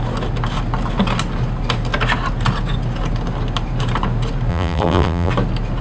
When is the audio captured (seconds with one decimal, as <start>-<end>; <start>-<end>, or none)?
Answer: 0.0-4.5; 5.3-5.8